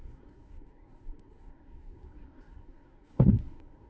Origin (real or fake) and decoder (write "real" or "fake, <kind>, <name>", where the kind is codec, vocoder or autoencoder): fake, codec, SNAC